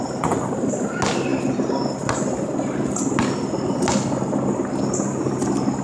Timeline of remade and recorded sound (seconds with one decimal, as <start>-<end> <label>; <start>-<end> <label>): 0.0-5.8 recorded